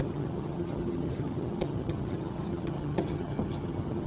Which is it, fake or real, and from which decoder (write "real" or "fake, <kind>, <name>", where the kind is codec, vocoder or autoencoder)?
fake, vocoder, HiFi-GAN